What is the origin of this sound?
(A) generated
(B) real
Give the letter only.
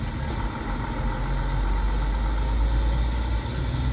B